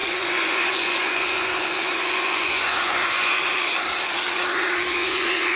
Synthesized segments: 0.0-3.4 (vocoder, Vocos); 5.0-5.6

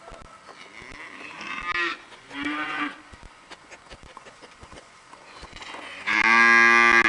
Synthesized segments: 1.9-6.2 (vocoder, Vocos)

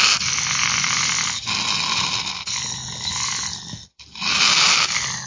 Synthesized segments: none